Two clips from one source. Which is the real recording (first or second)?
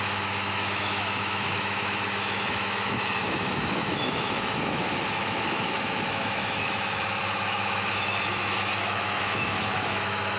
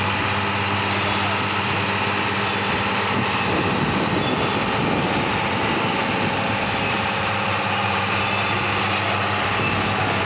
second